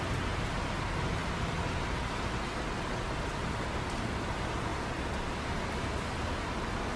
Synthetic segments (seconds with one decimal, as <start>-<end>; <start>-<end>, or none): none